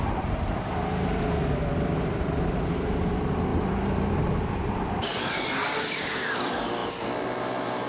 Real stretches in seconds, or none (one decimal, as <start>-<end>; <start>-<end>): 0.0-7.9